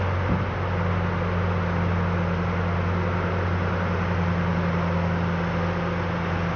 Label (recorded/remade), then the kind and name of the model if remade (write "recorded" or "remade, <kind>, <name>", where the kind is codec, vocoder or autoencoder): recorded